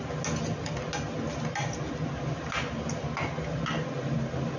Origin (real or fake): real